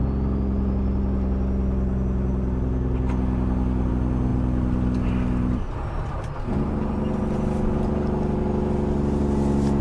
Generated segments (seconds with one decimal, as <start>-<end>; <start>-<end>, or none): none